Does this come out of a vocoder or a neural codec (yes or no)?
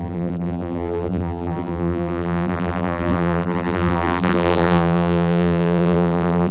yes